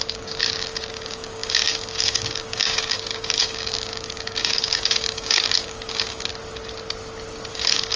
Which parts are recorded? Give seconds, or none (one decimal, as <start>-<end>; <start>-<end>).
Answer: 6.3-7.5